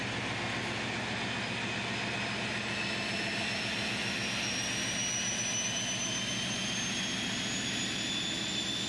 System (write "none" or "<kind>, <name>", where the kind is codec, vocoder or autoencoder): none